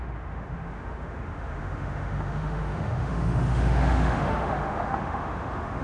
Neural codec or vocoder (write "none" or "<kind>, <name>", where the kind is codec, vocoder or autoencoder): autoencoder, DAC-VAE